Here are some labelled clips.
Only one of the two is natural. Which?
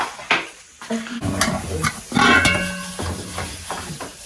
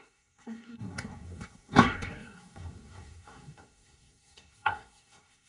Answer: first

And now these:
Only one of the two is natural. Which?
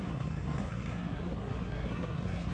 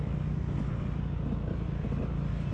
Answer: second